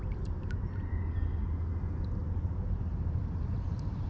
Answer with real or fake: real